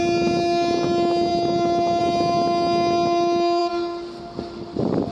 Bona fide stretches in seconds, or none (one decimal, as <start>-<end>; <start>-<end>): 0.0-1.3; 2.0-5.1